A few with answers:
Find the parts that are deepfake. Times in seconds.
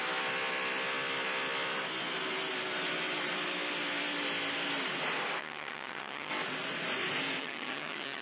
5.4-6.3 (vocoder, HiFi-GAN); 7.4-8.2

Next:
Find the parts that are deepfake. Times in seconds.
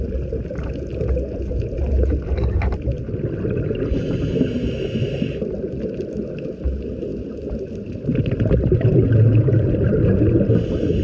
none